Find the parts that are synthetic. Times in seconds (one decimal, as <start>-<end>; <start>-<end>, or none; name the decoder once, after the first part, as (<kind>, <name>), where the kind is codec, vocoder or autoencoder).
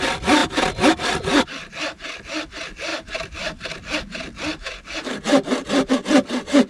0.4-0.9 (vocoder, BigVGAN v2); 2.9-5.9